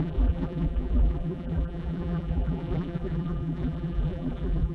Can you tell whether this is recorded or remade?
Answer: remade